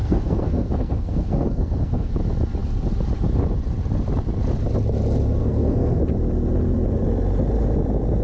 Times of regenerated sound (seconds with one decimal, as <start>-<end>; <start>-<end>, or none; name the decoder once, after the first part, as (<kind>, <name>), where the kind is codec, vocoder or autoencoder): 0.0-2.1 (codec, SNAC); 5.4-6.0